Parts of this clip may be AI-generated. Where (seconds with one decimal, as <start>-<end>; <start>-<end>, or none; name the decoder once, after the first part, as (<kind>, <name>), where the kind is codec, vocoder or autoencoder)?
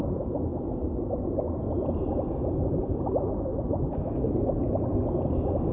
0.0-0.5 (vocoder, BigVGAN v2); 2.8-3.5